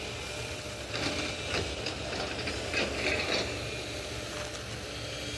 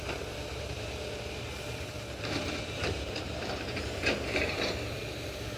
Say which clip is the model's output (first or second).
second